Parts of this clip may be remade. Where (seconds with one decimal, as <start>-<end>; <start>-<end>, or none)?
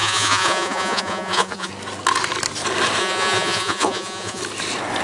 0.0-1.7; 3.0-4.4